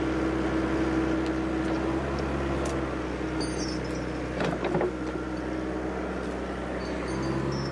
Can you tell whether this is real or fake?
real